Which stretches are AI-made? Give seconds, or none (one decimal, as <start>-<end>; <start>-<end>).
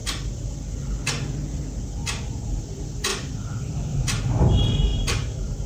2.3-3.1; 4.4-5.7